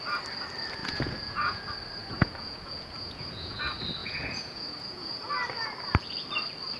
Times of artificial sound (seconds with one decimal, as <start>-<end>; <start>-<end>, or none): 0.8-1.6; 2.0-3.6; 4.0-5.3